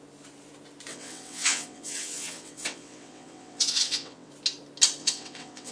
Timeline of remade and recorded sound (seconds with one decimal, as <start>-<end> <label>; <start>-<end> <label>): 0.0-0.9 recorded; 0.9-4.3 remade; 4.3-5.0 recorded; 5.0-5.7 remade